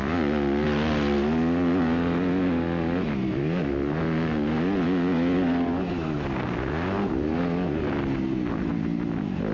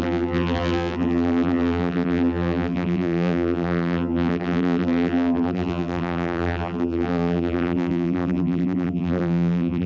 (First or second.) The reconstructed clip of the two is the second